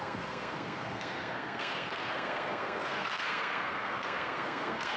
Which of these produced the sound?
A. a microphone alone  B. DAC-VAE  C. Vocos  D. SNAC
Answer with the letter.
D